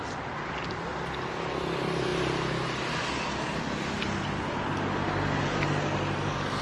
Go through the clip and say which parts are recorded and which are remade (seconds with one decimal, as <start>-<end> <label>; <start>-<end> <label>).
0.0-6.6 recorded